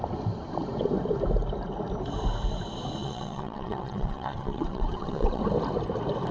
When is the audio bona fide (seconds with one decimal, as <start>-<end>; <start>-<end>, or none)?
0.0-3.0; 5.4-6.3